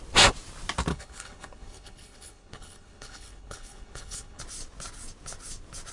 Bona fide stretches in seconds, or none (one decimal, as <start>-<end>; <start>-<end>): 0.0-0.9; 4.4-5.9